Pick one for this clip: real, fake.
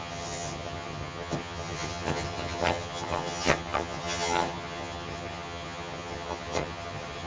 fake